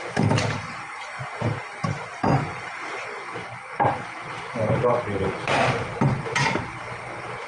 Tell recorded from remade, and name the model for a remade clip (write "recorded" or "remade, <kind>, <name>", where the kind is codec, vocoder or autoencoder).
remade, vocoder, BigVGAN v2